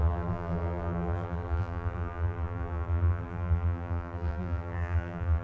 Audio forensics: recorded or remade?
remade